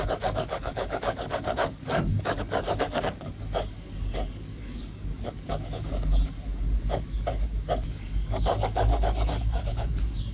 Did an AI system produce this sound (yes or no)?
yes